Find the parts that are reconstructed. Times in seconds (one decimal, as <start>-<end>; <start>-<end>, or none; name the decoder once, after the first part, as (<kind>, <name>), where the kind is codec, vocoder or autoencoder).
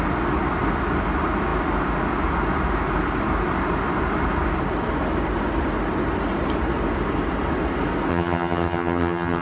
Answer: 8.1-9.4 (vocoder, HiFi-GAN)